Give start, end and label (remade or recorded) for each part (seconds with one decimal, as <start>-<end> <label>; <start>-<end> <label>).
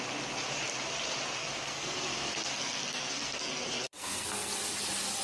0.0-1.4 recorded; 1.4-4.5 remade; 4.5-5.2 recorded